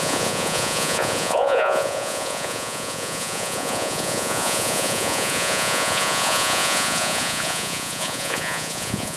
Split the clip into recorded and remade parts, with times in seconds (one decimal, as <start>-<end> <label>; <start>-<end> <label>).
0.0-9.2 remade